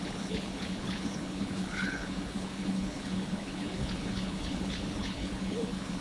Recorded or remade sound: remade